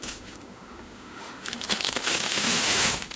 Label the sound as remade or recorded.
remade